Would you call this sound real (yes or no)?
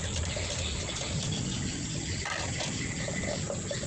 yes